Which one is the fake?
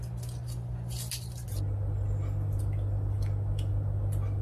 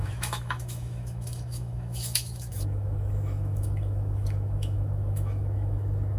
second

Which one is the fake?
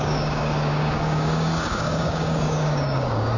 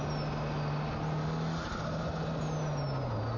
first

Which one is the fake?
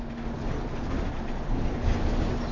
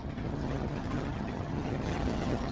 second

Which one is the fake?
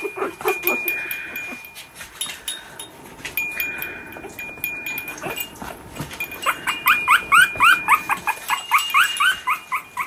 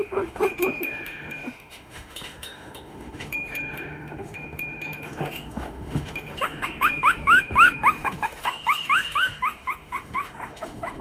second